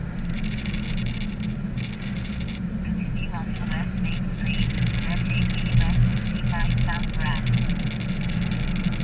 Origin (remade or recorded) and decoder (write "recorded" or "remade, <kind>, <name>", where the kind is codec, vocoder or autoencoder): recorded